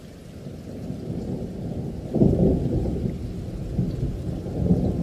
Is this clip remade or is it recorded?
recorded